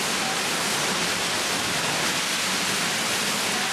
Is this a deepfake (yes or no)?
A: no